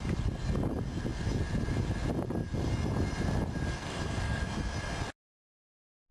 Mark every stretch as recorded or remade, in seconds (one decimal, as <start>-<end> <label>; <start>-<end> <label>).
0.0-3.8 recorded; 3.8-4.4 remade; 4.4-6.1 recorded